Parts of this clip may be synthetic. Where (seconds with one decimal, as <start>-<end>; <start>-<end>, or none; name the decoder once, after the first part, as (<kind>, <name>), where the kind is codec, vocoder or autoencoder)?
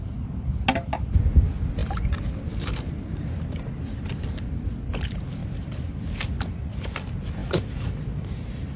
5.4-6.0 (vocoder, BigVGAN v2); 7.4-8.8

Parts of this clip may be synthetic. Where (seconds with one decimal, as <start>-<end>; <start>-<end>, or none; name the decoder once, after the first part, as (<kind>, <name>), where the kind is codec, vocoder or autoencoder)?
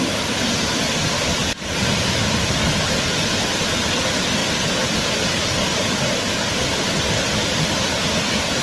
none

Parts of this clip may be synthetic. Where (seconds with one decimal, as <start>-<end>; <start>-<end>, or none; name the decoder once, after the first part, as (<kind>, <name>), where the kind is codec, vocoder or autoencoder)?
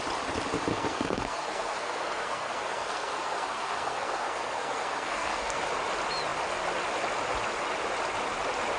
0.7-5.6 (codec, SNAC)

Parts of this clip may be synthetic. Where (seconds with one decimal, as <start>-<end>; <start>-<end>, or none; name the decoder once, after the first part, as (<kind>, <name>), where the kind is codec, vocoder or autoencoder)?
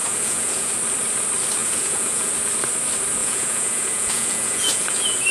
0.0-0.7 (vocoder, Vocos); 1.6-2.3; 3.2-5.3